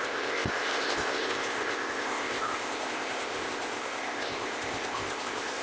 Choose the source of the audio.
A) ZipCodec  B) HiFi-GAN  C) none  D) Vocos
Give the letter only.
A